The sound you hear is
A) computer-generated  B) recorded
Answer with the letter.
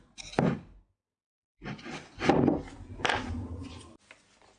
B